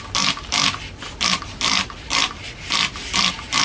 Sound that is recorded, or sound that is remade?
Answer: recorded